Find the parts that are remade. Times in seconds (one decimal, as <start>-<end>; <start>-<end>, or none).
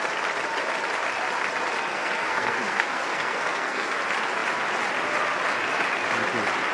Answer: 1.9-4.0